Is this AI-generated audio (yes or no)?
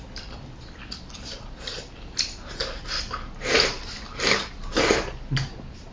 no